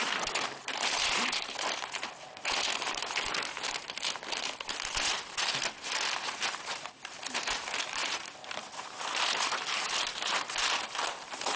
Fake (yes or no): yes